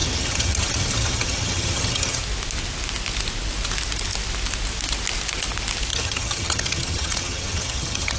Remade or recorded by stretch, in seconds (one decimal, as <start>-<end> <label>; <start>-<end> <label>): 0.0-2.2 remade; 2.2-5.9 recorded; 5.9-8.2 remade